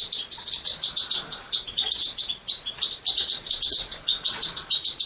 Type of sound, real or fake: fake